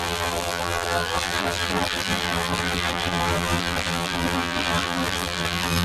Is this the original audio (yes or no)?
no